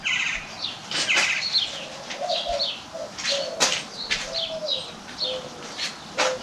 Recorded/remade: recorded